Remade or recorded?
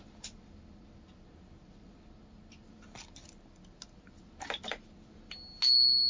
recorded